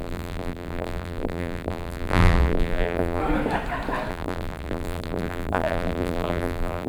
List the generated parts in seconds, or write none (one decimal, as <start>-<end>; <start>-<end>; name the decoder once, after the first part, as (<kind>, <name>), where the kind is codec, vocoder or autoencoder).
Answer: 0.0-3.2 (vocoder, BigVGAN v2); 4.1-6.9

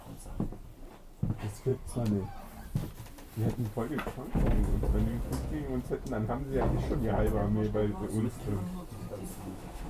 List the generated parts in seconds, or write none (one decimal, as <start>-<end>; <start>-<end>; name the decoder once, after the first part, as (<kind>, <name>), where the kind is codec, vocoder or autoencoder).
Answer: 9.3-9.9 (autoencoder, DAC-VAE)

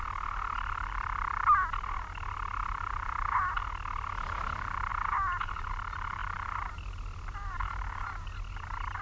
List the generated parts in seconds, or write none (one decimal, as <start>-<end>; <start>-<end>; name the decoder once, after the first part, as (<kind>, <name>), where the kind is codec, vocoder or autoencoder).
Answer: 2.6-3.4 (vocoder, BigVGAN v2); 4.9-5.7